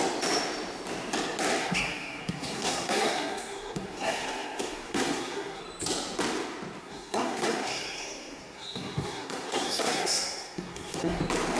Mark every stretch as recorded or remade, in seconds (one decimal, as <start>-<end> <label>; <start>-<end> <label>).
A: 0.0-1.6 recorded; 1.6-5.6 remade; 5.6-6.8 recorded; 6.8-11.2 remade; 11.2-11.6 recorded